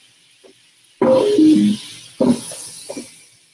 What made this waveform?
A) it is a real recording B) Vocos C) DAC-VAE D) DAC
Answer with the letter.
A